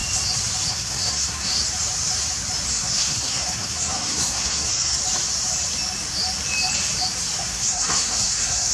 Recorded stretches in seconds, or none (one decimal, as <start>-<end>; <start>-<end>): 0.0-0.7; 1.5-2.7; 5.0-7.4